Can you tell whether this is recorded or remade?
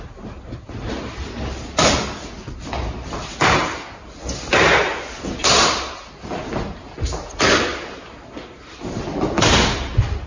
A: recorded